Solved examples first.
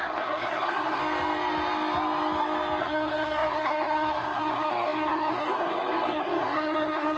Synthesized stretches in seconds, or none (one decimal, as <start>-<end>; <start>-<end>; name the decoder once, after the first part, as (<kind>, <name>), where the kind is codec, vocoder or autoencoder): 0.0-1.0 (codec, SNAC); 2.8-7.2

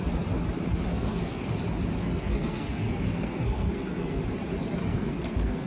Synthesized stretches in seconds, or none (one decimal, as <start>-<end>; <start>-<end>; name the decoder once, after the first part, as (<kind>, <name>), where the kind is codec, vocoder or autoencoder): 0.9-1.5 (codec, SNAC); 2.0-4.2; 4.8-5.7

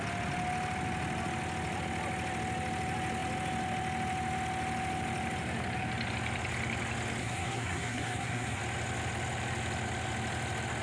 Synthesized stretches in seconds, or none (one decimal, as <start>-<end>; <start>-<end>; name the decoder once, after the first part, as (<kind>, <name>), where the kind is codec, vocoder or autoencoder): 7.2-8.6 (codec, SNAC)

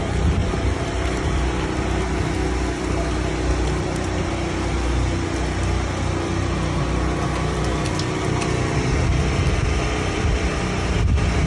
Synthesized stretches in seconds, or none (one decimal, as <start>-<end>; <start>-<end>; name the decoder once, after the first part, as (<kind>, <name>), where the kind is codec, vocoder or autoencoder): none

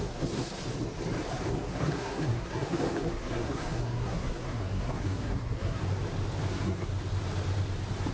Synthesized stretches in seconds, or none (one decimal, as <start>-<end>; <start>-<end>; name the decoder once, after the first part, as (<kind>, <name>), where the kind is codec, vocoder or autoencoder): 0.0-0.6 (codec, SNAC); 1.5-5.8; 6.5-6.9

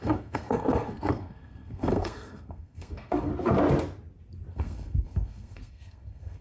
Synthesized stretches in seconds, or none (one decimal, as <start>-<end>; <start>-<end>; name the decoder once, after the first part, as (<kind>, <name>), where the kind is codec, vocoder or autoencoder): 0.0-3.3 (codec, SNAC); 4.5-6.4

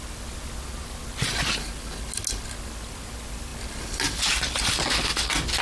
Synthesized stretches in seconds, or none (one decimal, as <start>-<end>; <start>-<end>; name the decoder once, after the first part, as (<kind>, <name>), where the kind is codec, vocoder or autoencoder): none